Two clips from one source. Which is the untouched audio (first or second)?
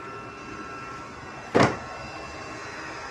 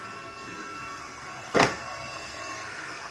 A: first